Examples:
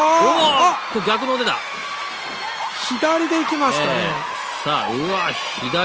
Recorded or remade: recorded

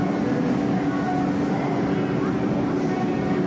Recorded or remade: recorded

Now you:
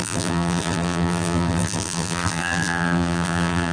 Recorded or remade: remade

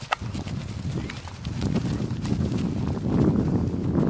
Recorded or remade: recorded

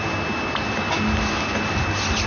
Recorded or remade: recorded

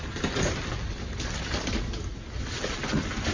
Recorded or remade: recorded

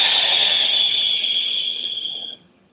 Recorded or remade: remade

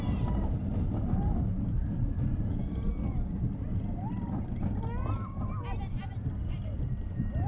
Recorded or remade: recorded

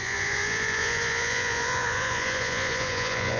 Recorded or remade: remade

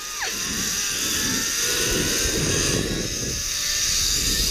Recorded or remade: recorded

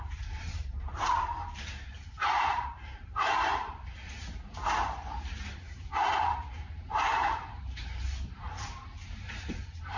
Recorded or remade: remade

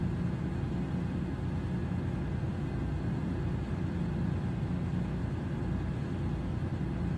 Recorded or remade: recorded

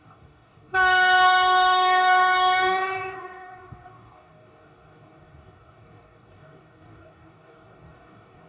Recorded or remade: remade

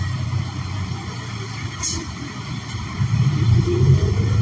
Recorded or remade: remade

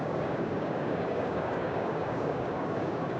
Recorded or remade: remade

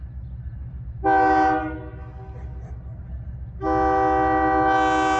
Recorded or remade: recorded